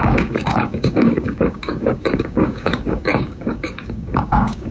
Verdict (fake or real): fake